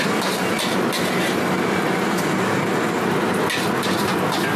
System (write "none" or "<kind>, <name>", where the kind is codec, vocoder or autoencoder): none